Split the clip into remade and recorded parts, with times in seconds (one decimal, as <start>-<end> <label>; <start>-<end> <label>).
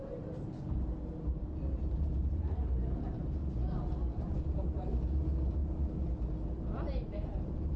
0.0-3.4 remade; 3.4-4.2 recorded; 4.2-5.6 remade; 5.6-6.6 recorded; 6.6-7.8 remade